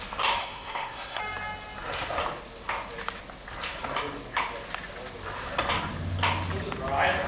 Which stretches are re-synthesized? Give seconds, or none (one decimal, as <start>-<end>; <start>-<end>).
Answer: 0.4-1.2